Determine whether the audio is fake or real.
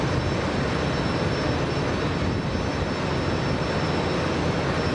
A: real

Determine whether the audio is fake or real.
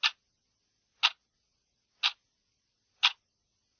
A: real